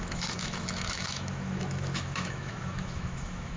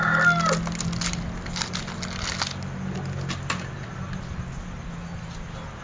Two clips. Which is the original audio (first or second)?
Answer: second